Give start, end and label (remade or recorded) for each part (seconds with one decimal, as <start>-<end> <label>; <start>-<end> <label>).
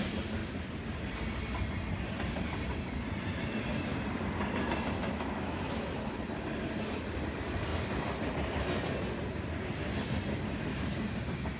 0.0-5.1 recorded; 5.1-6.2 remade; 6.2-11.6 recorded